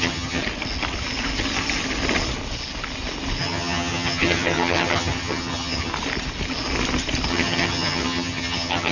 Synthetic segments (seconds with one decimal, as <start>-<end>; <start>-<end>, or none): 0.0-0.4; 3.4-5.9; 7.3-8.9